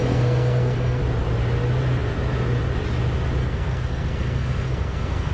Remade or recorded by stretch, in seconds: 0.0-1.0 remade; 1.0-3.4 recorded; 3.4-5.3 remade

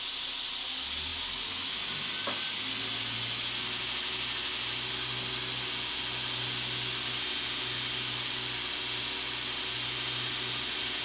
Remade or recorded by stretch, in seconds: 0.0-11.0 recorded